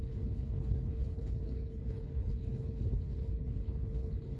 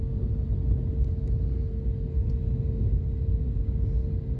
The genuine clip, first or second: second